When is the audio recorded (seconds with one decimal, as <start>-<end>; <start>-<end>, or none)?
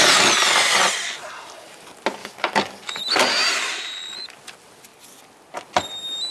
0.0-2.2; 3.0-6.3